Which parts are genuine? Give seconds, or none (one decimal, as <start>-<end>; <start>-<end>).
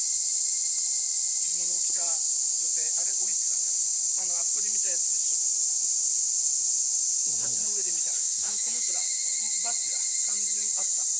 0.0-8.2; 8.9-11.2